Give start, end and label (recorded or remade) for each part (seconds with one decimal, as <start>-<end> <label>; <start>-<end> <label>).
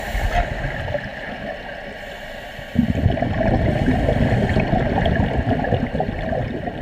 0.0-6.8 recorded